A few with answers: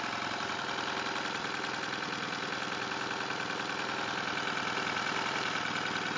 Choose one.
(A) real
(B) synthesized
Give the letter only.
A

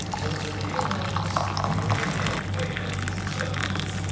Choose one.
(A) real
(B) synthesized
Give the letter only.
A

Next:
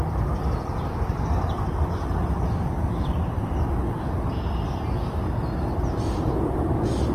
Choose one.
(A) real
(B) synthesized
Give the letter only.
A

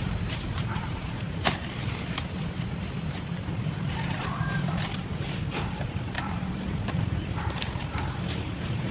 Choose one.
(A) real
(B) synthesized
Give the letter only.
B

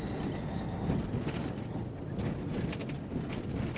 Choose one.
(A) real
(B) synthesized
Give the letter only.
A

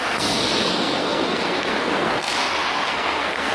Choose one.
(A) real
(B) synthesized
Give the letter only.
B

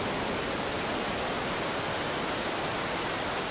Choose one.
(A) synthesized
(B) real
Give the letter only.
B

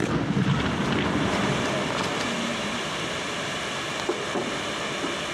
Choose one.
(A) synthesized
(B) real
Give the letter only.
B